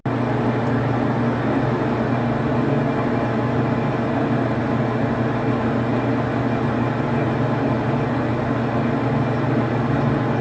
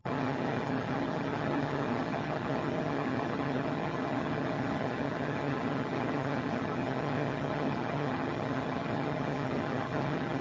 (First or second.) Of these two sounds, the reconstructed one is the second